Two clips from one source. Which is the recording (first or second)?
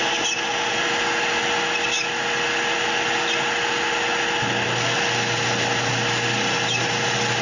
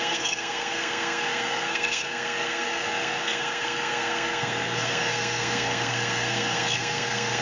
first